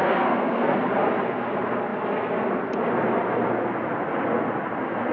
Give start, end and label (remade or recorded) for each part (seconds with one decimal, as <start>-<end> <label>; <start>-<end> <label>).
0.0-0.7 remade; 0.7-5.1 recorded

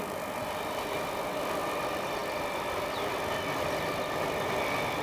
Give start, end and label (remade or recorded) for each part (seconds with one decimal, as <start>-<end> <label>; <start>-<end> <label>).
0.0-5.0 recorded

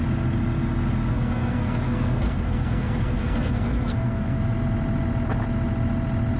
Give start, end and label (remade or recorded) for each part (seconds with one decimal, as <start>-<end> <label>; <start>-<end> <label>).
0.0-1.1 recorded; 1.1-4.4 remade; 4.4-6.4 recorded

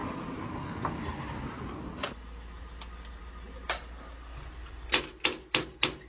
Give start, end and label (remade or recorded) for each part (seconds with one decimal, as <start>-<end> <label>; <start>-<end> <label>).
0.0-6.1 recorded

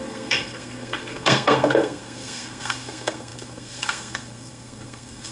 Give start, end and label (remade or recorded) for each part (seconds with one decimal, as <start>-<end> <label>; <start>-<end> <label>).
0.0-5.3 remade

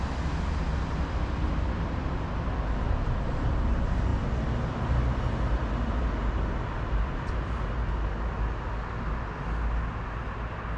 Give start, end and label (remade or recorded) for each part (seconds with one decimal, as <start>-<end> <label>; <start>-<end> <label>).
0.0-10.8 recorded

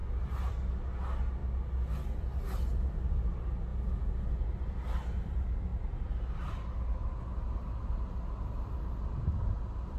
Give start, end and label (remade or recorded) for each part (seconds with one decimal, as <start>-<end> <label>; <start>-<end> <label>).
0.0-10.0 recorded

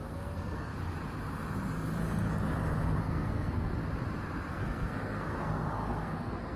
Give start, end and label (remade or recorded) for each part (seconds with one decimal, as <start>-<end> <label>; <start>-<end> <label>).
0.0-0.7 remade; 0.7-3.0 recorded; 3.0-3.8 remade; 3.8-4.5 recorded; 4.5-6.6 remade